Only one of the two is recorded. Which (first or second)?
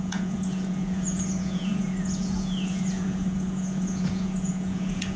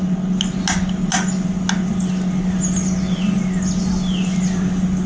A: second